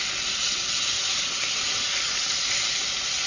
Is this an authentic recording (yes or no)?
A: yes